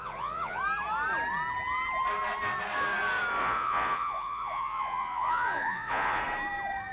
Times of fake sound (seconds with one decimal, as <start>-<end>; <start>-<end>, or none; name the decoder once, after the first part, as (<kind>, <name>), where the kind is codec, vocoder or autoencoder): 0.0-0.6 (vocoder, Vocos); 3.4-6.2